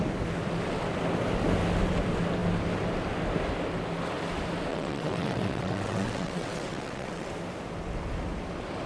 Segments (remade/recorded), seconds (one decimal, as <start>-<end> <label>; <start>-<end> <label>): 0.0-4.7 recorded; 4.7-7.3 remade; 7.3-8.9 recorded